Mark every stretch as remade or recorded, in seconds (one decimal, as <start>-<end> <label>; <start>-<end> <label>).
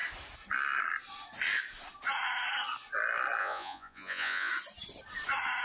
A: 0.0-3.4 recorded; 3.4-4.5 remade; 4.5-5.6 recorded